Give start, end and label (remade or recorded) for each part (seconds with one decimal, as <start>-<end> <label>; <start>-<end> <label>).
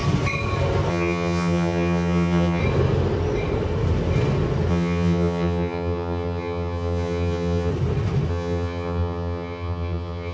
0.0-0.9 recorded; 0.9-2.6 remade; 2.6-4.7 recorded; 4.7-7.7 remade; 7.7-8.3 recorded; 8.3-10.3 remade